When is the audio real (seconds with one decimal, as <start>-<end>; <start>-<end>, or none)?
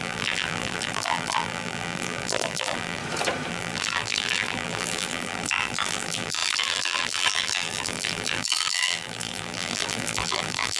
3.0-3.5